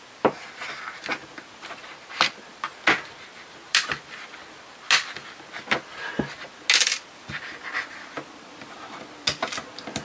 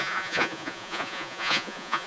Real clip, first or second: first